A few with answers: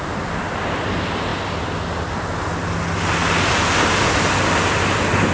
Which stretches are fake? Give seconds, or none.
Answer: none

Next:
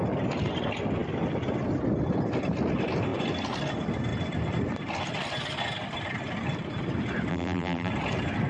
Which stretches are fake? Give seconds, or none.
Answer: 7.3-7.9 (vocoder, BigVGAN v2)

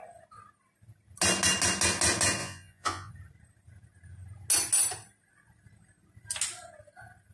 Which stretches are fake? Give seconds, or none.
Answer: 2.4-3.1 (vocoder, Vocos)

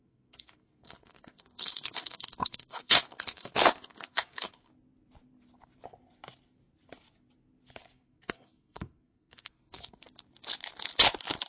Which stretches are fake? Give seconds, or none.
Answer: 0.0-4.7 (codec, SNAC); 7.8-10.0

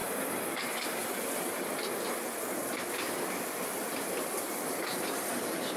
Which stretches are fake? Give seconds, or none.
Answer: 0.6-1.0 (vocoder, BigVGAN v2); 4.4-5.8

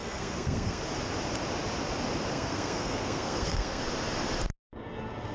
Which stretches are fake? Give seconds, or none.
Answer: 0.0-0.8 (codec, SNAC); 2.3-3.8

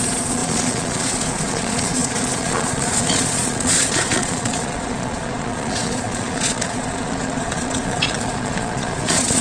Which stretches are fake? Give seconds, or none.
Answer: 0.0-9.4 (vocoder, Vocos)

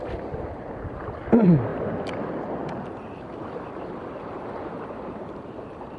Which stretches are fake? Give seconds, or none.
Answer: none